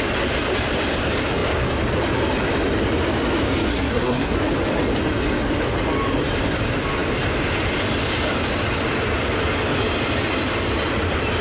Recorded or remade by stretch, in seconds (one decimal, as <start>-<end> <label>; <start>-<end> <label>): 0.0-3.7 recorded; 3.7-4.4 remade; 4.4-11.4 recorded